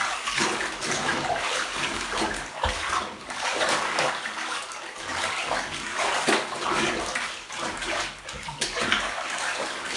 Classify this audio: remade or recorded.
remade